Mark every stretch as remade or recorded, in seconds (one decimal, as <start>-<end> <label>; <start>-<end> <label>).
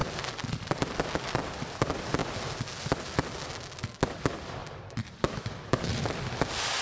0.0-1.8 remade; 1.8-4.6 recorded; 4.6-6.8 remade